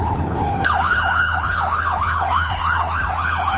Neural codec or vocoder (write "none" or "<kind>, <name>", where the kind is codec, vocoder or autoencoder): codec, HILCodec